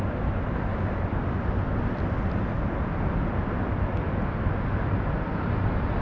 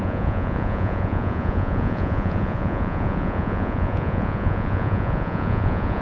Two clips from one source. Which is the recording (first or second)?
first